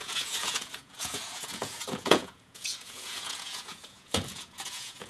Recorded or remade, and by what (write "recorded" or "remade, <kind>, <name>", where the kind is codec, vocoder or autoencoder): remade, vocoder, Vocos